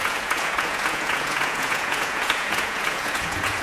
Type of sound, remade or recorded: remade